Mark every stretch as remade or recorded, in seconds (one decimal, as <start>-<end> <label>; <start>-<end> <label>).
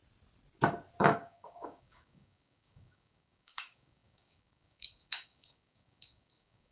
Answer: 0.0-1.0 recorded; 1.0-6.7 remade